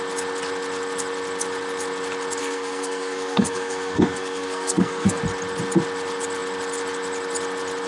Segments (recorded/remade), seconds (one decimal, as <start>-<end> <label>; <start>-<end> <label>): 0.0-2.4 recorded; 2.4-5.2 remade; 5.2-7.9 recorded